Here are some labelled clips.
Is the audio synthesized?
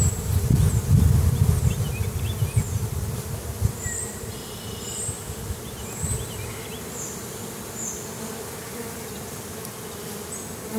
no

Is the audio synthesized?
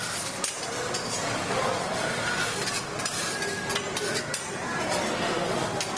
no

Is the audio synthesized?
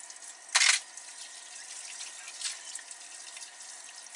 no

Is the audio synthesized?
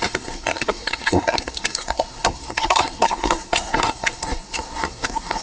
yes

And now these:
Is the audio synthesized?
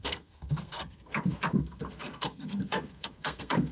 yes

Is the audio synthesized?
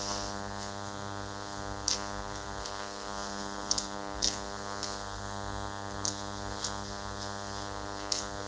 yes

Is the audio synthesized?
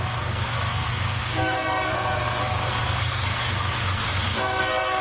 yes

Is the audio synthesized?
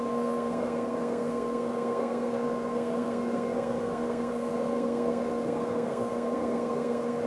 yes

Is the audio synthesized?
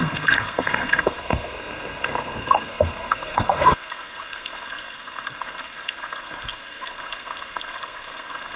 yes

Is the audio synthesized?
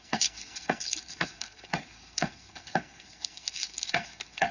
yes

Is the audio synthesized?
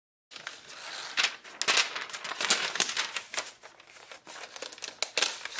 no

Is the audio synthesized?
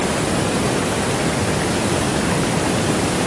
no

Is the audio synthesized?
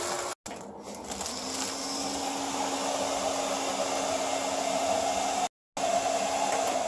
no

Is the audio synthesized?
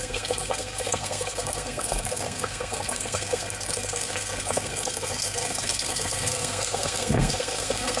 yes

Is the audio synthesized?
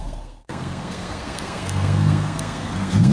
yes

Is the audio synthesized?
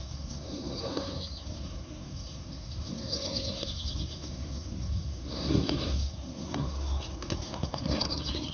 yes